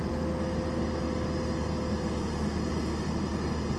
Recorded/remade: recorded